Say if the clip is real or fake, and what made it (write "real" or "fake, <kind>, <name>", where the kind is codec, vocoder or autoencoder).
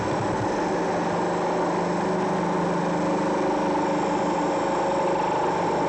real